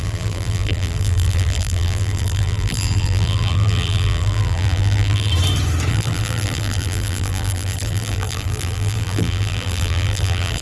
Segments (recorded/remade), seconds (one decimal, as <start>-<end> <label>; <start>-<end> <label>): 0.0-5.3 remade; 5.3-5.9 recorded; 5.9-10.6 remade